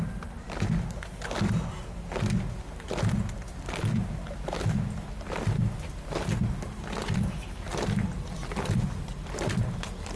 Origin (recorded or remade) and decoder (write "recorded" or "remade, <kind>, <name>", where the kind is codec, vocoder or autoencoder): recorded